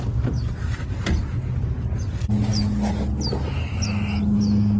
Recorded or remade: recorded